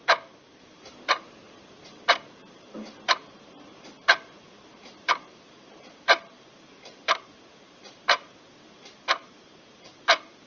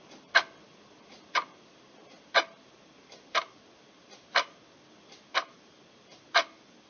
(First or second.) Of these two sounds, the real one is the second